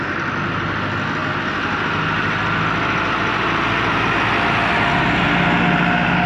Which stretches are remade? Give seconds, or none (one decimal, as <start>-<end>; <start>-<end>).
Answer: none